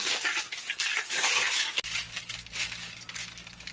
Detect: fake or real fake